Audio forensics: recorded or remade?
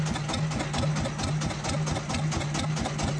recorded